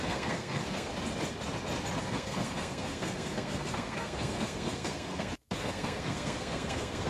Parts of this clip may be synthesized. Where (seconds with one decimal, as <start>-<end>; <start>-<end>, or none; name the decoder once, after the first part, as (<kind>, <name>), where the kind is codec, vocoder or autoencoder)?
0.0-0.9 (codec, SNAC); 2.0-7.1